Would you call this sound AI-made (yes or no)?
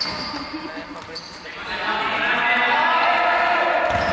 no